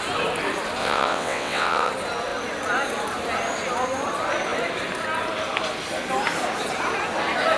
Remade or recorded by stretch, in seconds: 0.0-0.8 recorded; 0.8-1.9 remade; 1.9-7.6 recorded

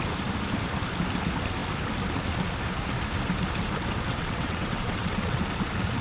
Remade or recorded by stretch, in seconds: 0.0-4.1 recorded; 4.1-5.4 remade; 5.4-6.0 recorded

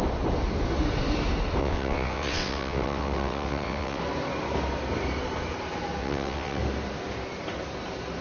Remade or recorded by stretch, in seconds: 0.0-1.6 recorded; 1.6-4.0 remade; 4.0-6.0 recorded; 6.0-6.6 remade; 6.6-8.2 recorded

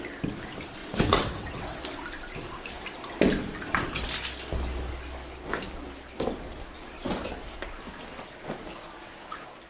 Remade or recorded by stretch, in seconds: 0.0-0.8 recorded; 0.8-1.8 remade; 1.8-9.7 recorded